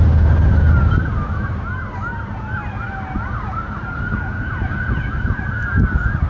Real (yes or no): yes